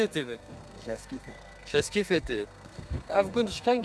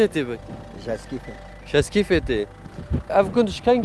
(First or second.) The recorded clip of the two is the second